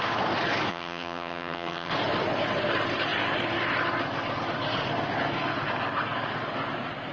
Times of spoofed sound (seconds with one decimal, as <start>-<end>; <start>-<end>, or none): 0.7-1.9